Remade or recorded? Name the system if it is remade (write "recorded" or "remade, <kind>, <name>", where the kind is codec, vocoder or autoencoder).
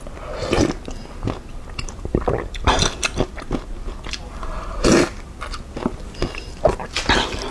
recorded